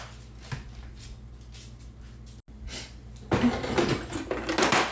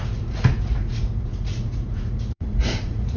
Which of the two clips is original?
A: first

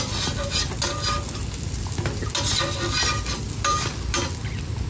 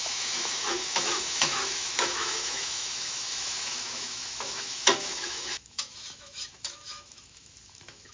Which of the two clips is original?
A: first